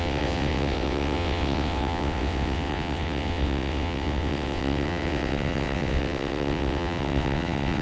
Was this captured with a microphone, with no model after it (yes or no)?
no